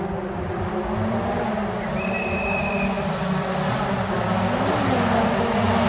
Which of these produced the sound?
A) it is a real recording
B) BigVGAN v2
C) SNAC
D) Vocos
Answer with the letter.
A